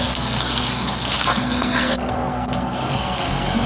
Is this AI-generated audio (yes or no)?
yes